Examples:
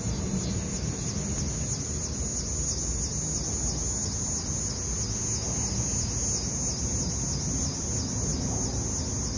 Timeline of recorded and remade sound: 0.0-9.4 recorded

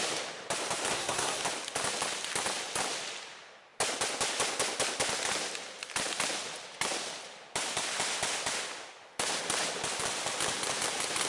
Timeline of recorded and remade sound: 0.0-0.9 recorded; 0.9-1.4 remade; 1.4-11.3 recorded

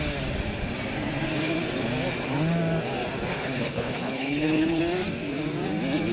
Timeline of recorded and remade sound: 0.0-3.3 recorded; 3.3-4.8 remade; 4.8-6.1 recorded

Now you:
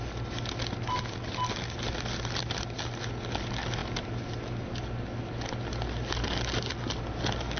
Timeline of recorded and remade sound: 0.0-7.6 recorded